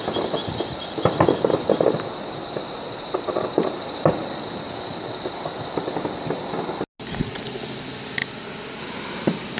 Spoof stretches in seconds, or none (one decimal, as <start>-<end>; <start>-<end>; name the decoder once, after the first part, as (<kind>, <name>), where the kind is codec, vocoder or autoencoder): none